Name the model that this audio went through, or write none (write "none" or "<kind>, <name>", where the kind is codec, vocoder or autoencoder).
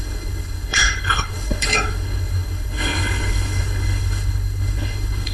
codec, HILCodec